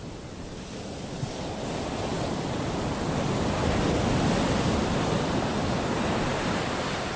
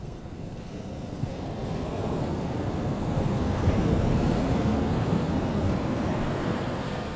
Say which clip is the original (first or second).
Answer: first